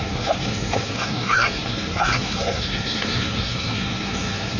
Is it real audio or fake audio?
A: fake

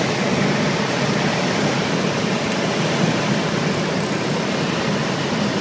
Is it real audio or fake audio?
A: real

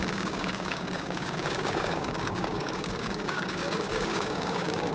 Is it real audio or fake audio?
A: fake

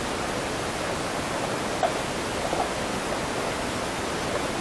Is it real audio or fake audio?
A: real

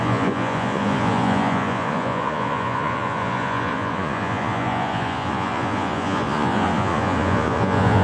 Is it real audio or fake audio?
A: fake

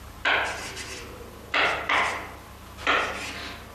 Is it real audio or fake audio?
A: real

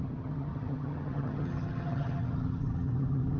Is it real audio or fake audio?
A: fake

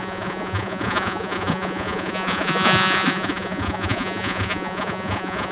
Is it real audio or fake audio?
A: fake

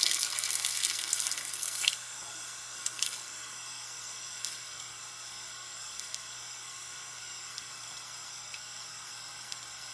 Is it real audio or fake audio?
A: fake